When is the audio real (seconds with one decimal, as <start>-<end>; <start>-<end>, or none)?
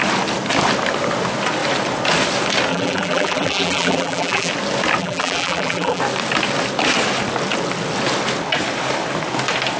0.0-2.7; 4.5-5.0; 6.0-9.8